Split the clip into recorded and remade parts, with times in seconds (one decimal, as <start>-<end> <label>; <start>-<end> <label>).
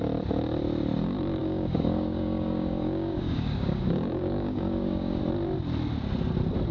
0.0-1.4 recorded; 1.4-5.2 remade; 5.2-6.7 recorded